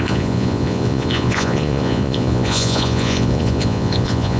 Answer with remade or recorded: remade